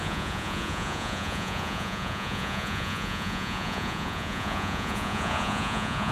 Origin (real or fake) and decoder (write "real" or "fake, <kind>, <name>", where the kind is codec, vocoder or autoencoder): fake, vocoder, Vocos